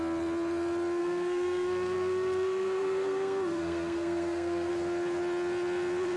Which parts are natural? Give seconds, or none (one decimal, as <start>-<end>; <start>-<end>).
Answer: 0.0-1.0; 4.7-6.2